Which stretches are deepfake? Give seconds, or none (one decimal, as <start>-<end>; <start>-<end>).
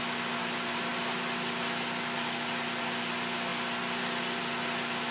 none